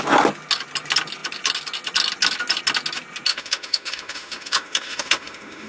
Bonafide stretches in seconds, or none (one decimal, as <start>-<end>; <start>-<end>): 0.0-3.3